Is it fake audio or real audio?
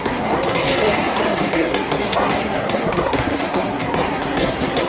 fake